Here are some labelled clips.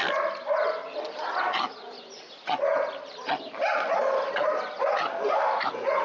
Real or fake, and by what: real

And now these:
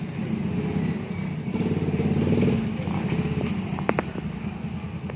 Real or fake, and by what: real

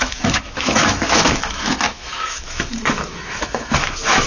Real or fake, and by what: fake, autoencoder, DAC-VAE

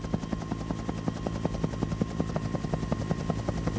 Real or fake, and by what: real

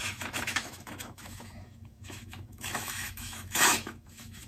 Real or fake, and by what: fake, autoencoder, DAC-VAE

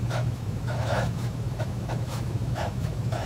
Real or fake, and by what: fake, autoencoder, DAC-VAE